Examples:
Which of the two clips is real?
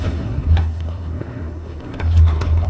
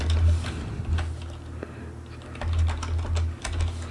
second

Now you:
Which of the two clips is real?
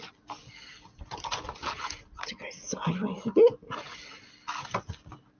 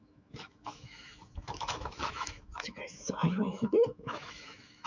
first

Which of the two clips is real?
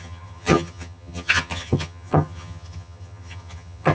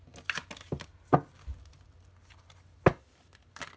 second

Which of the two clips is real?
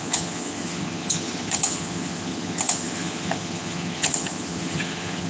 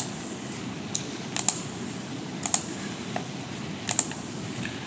second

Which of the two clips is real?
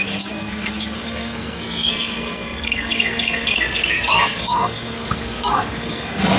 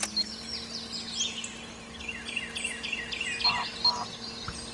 second